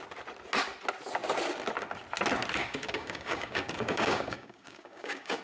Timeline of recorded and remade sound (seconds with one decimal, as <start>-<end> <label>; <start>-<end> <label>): 0.0-2.6 recorded; 2.6-5.4 remade